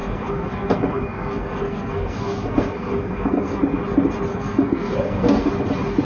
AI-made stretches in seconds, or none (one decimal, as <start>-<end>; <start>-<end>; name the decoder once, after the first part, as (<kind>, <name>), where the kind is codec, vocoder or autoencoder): 0.0-3.6 (codec, SNAC); 4.3-5.5